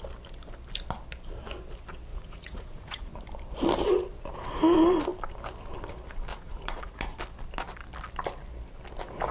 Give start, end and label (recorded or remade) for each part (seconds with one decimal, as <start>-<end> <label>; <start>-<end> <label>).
0.0-2.1 recorded; 2.1-3.1 remade; 3.1-6.3 recorded; 6.3-7.2 remade; 7.2-9.3 recorded